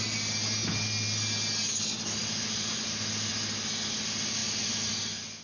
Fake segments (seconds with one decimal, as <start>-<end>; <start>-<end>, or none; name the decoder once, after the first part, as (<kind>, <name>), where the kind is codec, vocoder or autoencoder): none

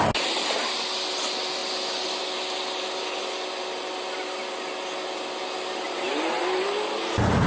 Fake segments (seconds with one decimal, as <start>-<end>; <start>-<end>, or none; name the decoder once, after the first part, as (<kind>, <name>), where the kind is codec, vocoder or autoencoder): none

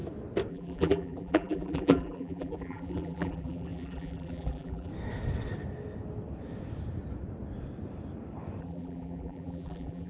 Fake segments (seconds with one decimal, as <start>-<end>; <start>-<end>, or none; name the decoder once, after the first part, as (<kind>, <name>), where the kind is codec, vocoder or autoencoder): 0.5-4.9 (vocoder, BigVGAN v2); 8.6-10.1

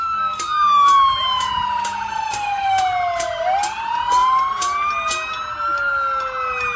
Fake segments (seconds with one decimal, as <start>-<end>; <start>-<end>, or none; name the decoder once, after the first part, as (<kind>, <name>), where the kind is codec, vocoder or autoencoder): 2.1-2.8 (codec, SNAC)

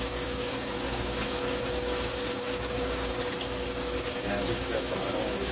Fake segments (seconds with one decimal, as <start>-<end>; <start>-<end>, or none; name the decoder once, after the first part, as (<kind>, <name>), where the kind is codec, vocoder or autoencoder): 0.0-3.1 (codec, DAC); 4.0-5.5

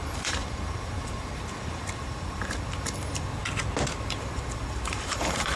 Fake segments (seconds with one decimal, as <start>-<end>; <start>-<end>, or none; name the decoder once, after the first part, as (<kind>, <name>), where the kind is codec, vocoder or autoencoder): 0.0-3.4 (vocoder, BigVGAN v2); 4.0-5.6

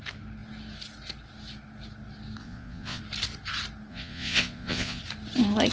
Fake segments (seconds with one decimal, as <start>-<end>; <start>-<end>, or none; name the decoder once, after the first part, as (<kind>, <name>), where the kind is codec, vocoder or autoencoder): 2.4-3.0 (vocoder, Vocos); 3.9-5.0